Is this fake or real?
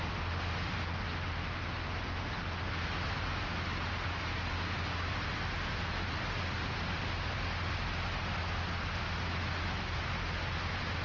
real